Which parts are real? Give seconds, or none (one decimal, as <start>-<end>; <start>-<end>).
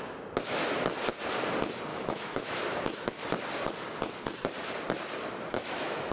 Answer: 0.0-1.9; 2.6-5.5